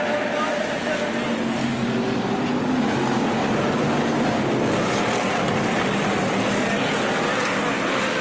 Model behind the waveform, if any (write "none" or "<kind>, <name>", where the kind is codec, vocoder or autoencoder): none